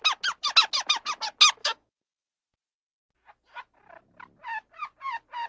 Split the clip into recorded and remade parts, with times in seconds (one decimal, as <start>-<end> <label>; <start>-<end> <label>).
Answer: 0.0-1.6 recorded; 1.6-2.3 remade; 2.3-5.5 recorded